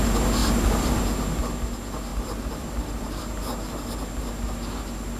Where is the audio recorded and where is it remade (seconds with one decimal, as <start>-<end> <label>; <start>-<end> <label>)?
0.0-0.4 recorded; 0.4-1.0 remade; 1.0-2.1 recorded; 2.1-3.2 remade; 3.2-5.2 recorded